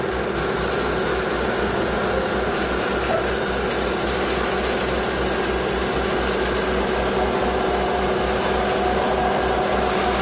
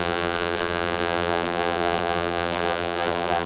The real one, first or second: first